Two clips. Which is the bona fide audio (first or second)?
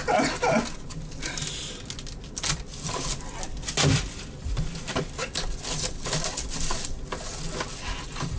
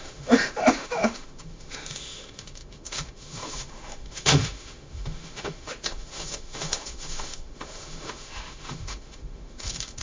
first